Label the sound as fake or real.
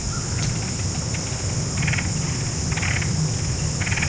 real